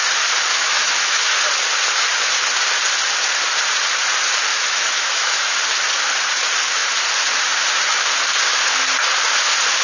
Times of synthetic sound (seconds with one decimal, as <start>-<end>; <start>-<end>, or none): 0.5-1.4; 4.5-5.6